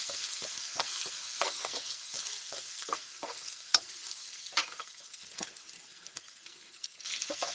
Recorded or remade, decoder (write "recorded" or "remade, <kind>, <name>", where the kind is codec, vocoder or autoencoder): remade, codec, SNAC